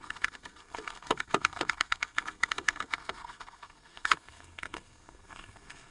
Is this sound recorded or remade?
remade